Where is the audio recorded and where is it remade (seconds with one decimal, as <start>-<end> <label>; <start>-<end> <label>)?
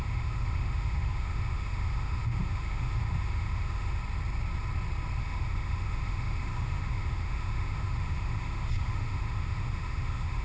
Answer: 0.0-4.0 remade; 4.0-5.2 recorded; 5.2-10.4 remade